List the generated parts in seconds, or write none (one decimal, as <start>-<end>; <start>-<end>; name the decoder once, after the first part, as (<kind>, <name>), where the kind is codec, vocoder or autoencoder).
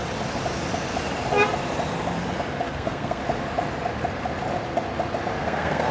2.7-3.2 (codec, SNAC); 5.4-5.9